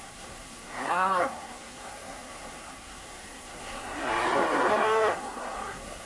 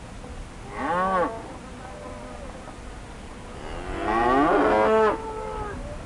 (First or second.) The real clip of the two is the second